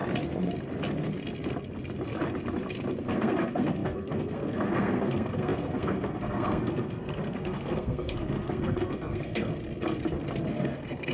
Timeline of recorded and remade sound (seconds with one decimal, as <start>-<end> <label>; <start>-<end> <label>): 0.0-3.0 recorded; 3.0-9.5 remade; 9.5-10.5 recorded; 10.5-11.1 remade